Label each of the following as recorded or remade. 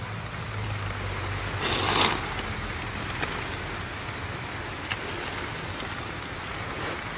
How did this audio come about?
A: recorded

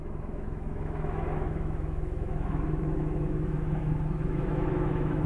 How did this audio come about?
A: remade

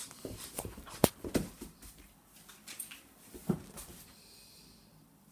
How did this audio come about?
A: remade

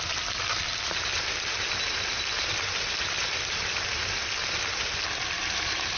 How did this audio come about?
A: recorded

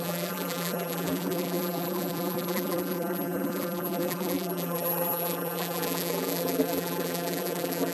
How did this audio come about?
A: remade